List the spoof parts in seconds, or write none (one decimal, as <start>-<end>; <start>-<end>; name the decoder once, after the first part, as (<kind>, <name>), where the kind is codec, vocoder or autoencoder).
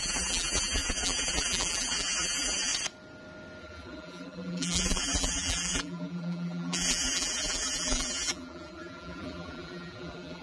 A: 0.0-2.7 (vocoder, BigVGAN v2); 3.6-10.4